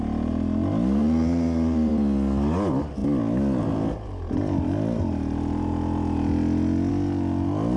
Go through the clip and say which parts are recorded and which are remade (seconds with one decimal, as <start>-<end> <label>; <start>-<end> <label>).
0.0-1.0 recorded; 1.0-1.9 remade; 1.9-7.8 recorded